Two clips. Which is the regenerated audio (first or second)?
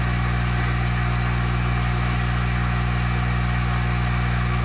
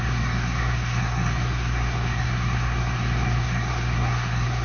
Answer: second